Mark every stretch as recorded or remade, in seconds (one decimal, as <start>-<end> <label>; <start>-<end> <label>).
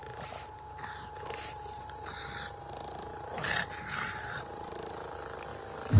0.0-2.1 remade; 2.1-3.1 recorded; 3.1-4.7 remade; 4.7-6.0 recorded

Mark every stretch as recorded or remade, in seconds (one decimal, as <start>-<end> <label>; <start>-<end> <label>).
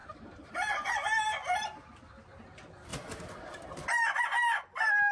0.0-5.1 recorded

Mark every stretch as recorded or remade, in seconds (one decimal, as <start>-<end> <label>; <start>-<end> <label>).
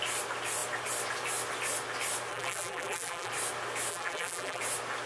0.0-2.3 recorded; 2.3-3.3 remade; 3.3-3.9 recorded; 3.9-4.6 remade; 4.6-5.1 recorded